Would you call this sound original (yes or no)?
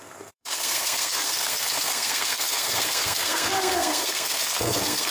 no